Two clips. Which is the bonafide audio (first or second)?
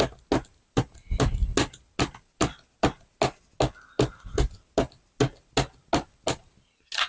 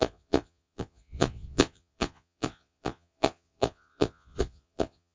first